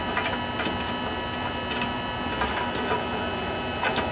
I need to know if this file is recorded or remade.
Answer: recorded